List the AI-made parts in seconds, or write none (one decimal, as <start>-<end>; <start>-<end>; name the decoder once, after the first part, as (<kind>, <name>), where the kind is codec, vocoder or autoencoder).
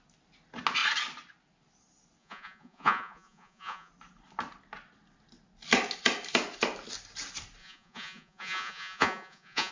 2.2-3.9 (vocoder, Vocos); 7.6-9.7